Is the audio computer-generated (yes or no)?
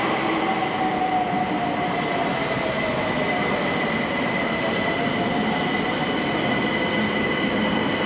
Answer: no